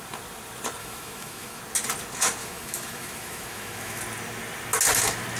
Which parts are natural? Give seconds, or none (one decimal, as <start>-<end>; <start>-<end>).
0.0-0.8; 1.6-2.4; 4.0-5.4